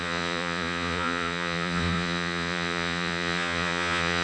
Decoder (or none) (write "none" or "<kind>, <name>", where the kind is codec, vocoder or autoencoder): vocoder, Vocos